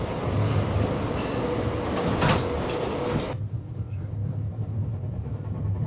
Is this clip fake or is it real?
real